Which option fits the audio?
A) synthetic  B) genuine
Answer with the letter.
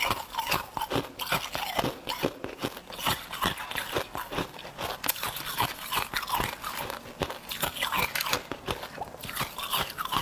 B